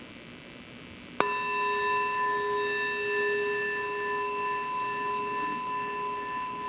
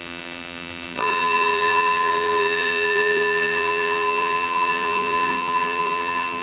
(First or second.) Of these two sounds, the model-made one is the second